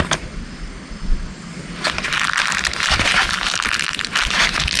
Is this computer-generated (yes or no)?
no